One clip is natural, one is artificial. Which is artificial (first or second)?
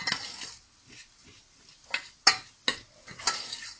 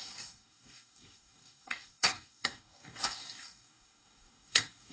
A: second